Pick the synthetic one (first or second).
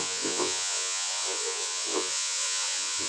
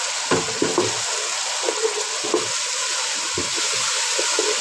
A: first